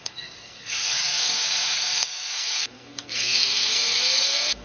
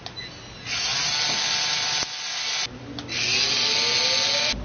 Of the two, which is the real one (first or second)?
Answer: second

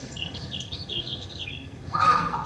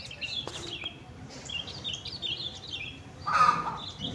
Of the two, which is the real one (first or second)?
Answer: second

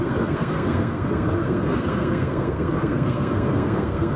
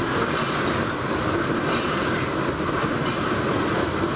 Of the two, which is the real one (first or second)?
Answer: second